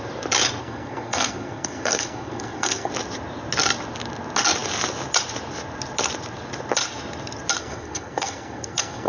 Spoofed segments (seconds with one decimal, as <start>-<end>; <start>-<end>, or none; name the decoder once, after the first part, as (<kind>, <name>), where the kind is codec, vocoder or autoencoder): 0.6-2.9 (codec, SNAC); 7.6-9.1

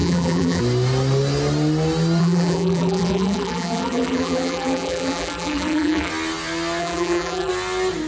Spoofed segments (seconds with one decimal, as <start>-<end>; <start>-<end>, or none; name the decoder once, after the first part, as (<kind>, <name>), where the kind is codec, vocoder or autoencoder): 0.0-0.6 (vocoder, BigVGAN v2); 2.2-6.1; 6.8-7.5